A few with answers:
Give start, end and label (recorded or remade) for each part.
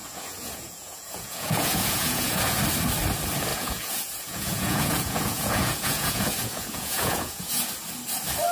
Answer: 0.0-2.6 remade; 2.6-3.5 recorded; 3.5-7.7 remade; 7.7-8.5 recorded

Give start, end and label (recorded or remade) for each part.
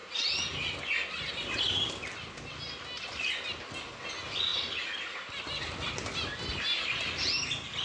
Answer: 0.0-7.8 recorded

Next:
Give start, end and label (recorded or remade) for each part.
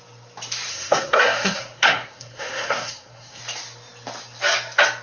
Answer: 0.0-0.7 recorded; 0.7-3.4 remade; 3.4-5.0 recorded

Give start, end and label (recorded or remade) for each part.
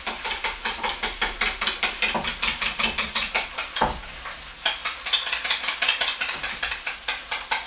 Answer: 0.0-7.7 recorded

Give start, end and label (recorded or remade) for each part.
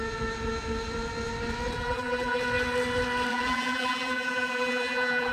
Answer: 0.0-1.8 recorded; 1.8-2.4 remade; 2.4-3.3 recorded; 3.3-5.3 remade